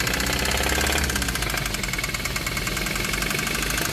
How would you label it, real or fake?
real